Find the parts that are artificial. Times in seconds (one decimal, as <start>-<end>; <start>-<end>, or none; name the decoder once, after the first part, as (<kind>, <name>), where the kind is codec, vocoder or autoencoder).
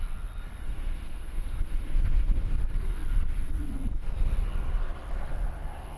0.6-2.4 (autoencoder, DAC-VAE)